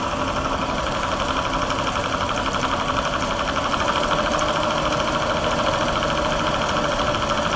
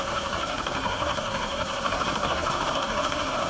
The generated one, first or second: second